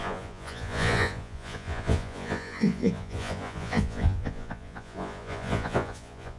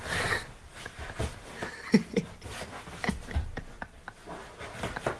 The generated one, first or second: first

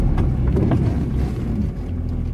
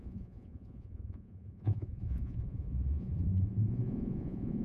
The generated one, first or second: second